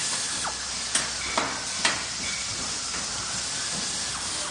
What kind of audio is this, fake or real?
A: real